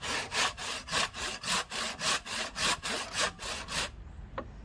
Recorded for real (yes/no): yes